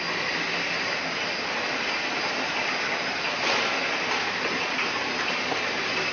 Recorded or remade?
recorded